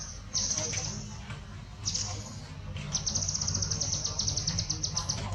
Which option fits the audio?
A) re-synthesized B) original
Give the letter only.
B